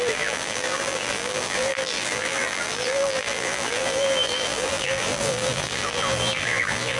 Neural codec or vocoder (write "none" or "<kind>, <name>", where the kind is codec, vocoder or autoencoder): vocoder, BigVGAN v2